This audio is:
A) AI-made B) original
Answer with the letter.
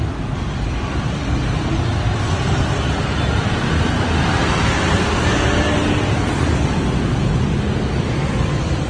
B